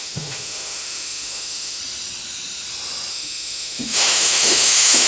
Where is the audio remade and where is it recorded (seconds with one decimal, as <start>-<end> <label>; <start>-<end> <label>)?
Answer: 0.0-1.8 remade; 1.8-3.1 recorded; 3.1-5.1 remade